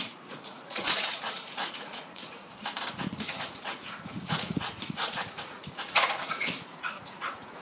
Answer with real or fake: fake